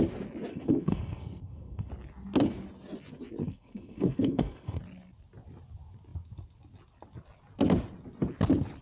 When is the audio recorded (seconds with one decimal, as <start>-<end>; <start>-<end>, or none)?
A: 0.0-0.5; 1.9-3.4; 4.8-8.8